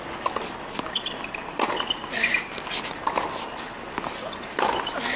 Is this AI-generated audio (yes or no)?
no